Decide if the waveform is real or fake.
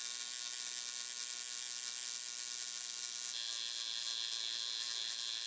real